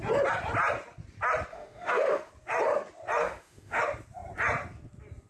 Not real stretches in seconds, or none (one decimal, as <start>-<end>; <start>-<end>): 1.5-2.3; 3.2-3.8